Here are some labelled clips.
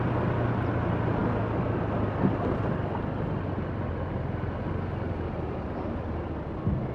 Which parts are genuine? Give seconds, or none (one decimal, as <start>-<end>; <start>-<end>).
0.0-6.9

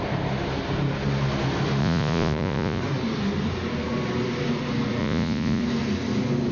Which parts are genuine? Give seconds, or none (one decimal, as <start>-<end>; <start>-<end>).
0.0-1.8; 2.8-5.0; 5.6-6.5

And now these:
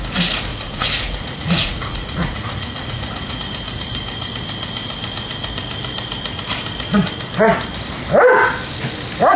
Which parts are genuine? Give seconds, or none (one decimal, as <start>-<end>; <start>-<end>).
0.0-0.5; 3.4-9.4